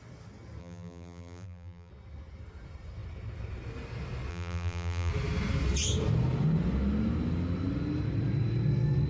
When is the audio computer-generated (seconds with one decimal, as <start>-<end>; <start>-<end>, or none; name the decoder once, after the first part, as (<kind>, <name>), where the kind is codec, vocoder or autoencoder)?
0.6-1.9 (vocoder, BigVGAN v2); 4.3-5.1